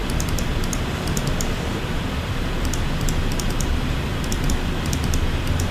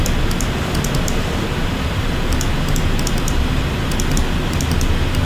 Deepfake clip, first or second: first